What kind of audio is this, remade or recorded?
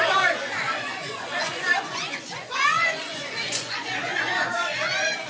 remade